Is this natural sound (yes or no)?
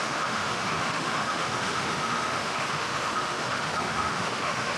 no